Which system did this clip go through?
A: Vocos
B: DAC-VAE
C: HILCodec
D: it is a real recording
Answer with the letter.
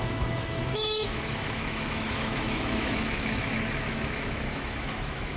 B